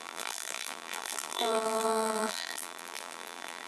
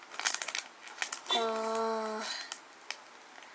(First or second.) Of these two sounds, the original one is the second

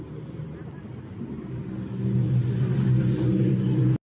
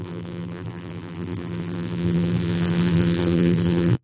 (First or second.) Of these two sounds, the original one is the first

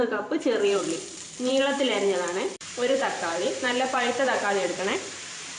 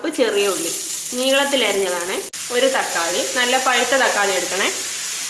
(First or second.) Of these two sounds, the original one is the second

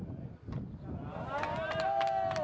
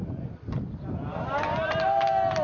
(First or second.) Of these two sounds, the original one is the first